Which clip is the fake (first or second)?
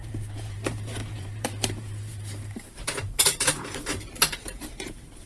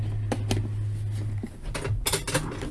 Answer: first